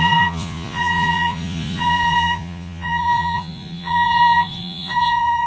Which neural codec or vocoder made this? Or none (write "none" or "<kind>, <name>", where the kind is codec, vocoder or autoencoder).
vocoder, Vocos